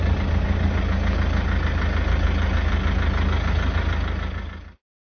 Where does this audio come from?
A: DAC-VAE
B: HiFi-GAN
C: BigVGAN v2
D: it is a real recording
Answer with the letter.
D